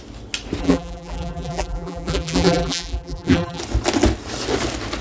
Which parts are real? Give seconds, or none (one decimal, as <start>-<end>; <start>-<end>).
0.0-0.6; 3.6-5.0